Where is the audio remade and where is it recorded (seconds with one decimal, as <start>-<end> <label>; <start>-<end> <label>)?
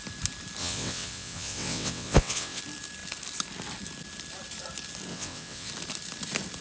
0.0-0.6 recorded; 0.6-2.6 remade; 2.6-5.1 recorded; 5.1-5.7 remade; 5.7-6.6 recorded